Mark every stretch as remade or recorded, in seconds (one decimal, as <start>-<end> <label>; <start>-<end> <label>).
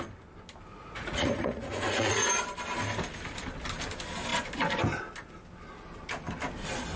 0.0-0.7 recorded; 0.7-2.4 remade; 2.4-7.0 recorded